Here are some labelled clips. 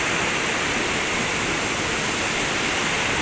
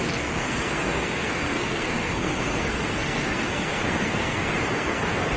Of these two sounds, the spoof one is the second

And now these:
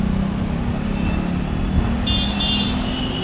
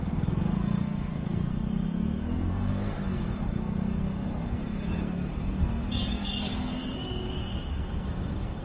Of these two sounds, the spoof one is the second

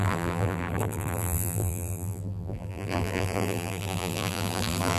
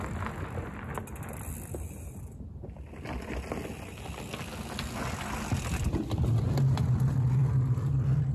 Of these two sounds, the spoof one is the first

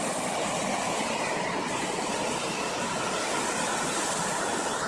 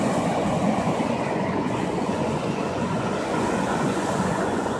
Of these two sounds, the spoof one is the second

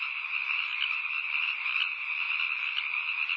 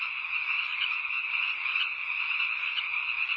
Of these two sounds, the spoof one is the second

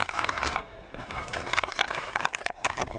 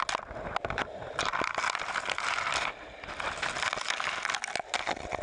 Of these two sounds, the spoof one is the first